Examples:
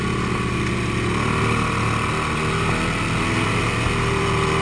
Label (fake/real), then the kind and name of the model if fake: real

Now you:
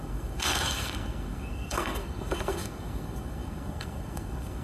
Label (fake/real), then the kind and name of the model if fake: fake, codec, SNAC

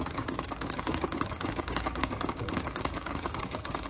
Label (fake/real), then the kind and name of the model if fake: fake, codec, DAC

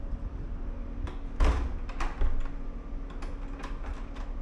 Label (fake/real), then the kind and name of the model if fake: real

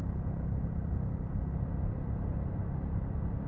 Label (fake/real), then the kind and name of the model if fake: real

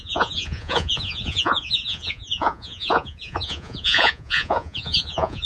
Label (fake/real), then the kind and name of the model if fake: fake, vocoder, Vocos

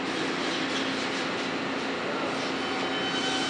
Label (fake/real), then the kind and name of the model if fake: real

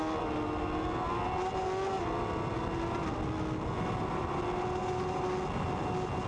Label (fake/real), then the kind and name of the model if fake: real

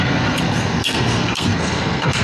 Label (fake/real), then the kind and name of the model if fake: fake, codec, SNAC